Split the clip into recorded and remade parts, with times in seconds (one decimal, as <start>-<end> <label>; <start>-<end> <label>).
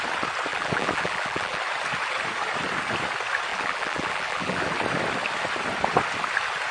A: 0.0-0.5 recorded; 0.5-1.6 remade; 1.6-3.5 recorded; 3.5-4.7 remade; 4.7-6.7 recorded